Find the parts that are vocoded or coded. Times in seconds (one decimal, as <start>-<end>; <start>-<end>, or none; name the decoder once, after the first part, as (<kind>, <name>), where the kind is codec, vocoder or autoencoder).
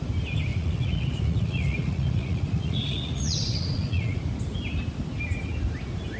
0.5-4.2 (vocoder, Vocos)